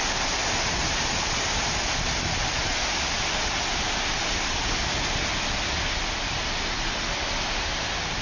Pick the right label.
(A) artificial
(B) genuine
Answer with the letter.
B